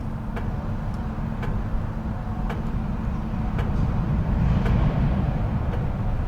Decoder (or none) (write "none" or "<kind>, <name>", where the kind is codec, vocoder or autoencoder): none